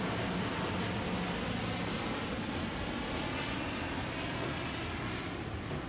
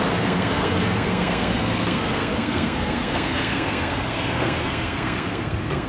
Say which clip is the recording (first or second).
first